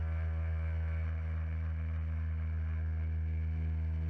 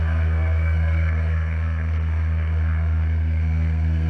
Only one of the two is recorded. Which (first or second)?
first